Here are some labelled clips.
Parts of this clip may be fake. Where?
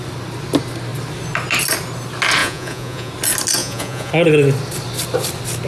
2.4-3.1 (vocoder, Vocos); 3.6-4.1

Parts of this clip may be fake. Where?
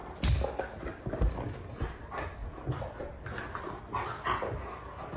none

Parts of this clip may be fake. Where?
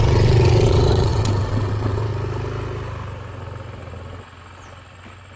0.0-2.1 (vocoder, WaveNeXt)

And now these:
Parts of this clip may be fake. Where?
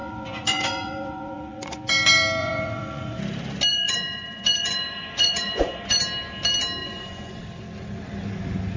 0.0-1.8 (vocoder, Vocos); 2.4-3.2; 3.7-6.0; 6.8-7.4